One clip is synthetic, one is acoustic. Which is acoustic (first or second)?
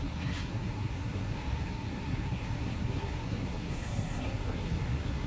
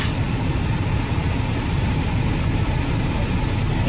second